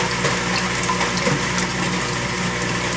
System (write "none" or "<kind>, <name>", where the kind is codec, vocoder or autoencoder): none